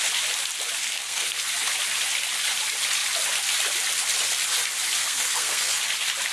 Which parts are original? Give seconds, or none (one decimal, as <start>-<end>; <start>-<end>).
0.0-0.8; 1.4-5.0; 5.8-6.3